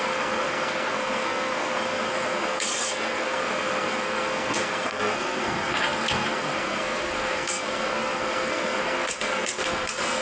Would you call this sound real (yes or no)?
no